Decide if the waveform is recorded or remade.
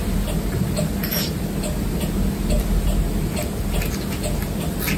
recorded